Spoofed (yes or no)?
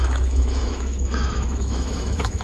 yes